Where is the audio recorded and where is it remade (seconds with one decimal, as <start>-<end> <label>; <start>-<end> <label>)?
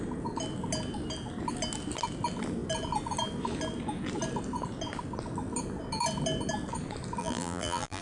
0.0-7.2 recorded; 7.2-8.0 remade